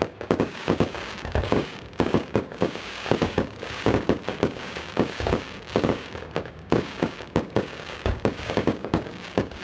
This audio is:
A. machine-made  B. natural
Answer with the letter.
A